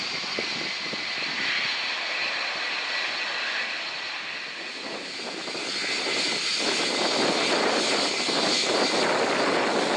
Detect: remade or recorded recorded